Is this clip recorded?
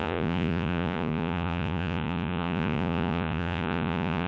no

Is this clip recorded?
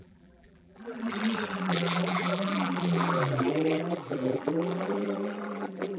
no